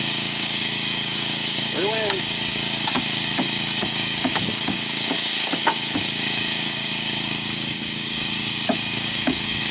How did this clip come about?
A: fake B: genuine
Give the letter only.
A